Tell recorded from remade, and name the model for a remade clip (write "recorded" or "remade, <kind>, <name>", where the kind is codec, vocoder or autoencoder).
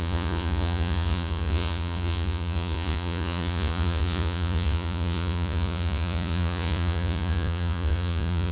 remade, vocoder, Vocos